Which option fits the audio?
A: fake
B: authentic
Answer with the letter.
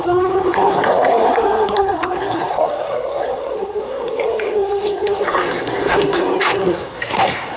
A